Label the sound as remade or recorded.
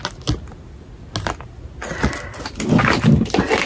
recorded